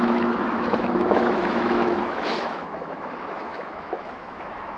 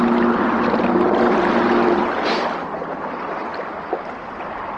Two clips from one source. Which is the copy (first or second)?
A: first